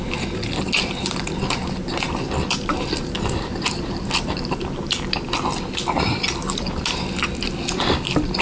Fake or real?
real